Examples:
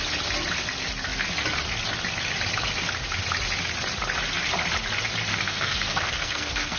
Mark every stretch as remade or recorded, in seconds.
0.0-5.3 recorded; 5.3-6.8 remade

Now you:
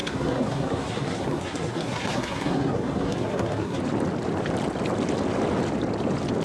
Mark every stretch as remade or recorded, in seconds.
0.0-3.8 remade; 3.8-6.4 recorded

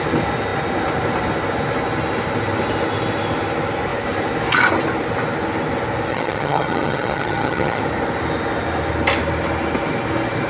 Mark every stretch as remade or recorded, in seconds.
0.0-6.1 recorded; 6.1-7.8 remade; 7.8-10.5 recorded

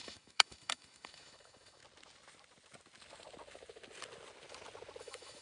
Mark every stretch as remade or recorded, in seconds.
0.0-1.8 remade; 1.8-5.0 recorded; 5.0-5.4 remade

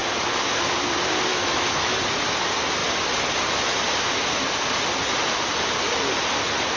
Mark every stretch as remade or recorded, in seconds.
0.0-1.3 recorded; 1.3-2.0 remade; 2.0-6.8 recorded

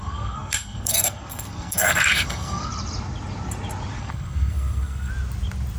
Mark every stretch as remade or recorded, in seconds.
0.0-2.7 remade; 2.7-4.0 recorded; 4.0-5.1 remade; 5.1-5.8 recorded

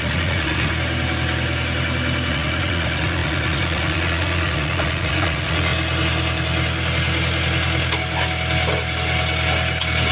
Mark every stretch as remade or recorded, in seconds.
0.0-0.7 remade; 0.7-2.3 recorded; 2.3-5.7 remade; 5.7-10.1 recorded

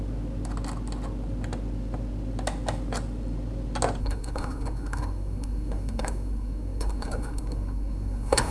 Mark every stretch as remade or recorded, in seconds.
0.0-4.0 recorded; 4.0-8.5 remade